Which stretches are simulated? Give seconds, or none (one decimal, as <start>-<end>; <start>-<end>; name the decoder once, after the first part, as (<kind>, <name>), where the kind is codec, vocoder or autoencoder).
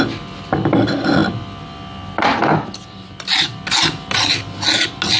none